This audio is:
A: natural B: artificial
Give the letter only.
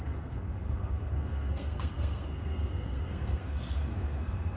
B